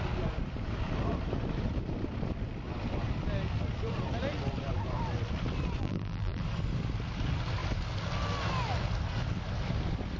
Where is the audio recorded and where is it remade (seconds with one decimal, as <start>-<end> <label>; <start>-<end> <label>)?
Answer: 0.0-5.8 recorded; 5.8-6.4 remade; 6.4-10.2 recorded